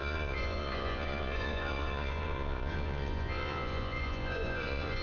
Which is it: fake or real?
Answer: fake